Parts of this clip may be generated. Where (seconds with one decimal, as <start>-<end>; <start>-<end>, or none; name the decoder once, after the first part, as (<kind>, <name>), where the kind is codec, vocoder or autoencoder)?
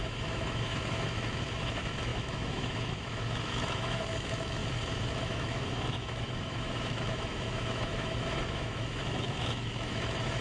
0.0-10.4 (autoencoder, DAC-VAE)